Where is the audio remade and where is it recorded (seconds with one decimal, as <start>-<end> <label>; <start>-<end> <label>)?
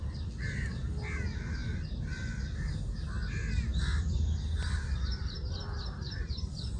0.0-3.7 recorded; 3.7-5.2 remade; 5.2-6.8 recorded